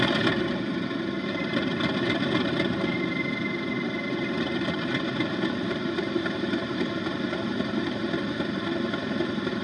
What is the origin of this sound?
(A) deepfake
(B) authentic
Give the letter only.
A